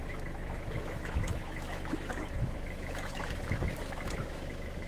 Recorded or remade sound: remade